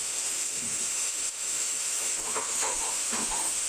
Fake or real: fake